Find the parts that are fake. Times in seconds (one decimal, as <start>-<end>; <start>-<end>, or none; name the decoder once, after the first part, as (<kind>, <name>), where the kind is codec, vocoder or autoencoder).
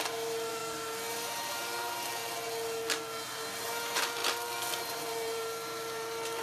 0.0-0.6 (vocoder, BigVGAN v2); 1.1-2.2; 3.6-4.2; 4.8-6.4